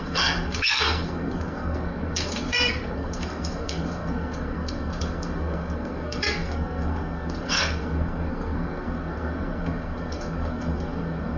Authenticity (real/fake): fake